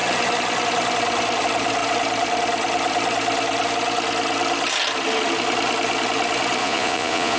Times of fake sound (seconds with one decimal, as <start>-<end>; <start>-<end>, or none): 6.6-7.4